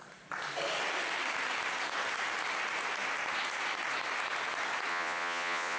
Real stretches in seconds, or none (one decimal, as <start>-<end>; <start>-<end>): 0.0-4.9